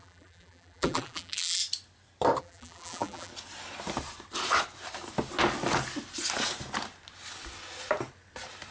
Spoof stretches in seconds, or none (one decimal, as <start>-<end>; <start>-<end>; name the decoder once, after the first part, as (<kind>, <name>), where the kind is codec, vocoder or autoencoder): 0.0-1.6 (vocoder, BigVGAN v2); 2.4-3.3